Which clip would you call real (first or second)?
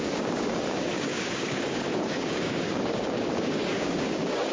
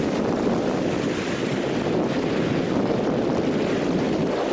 second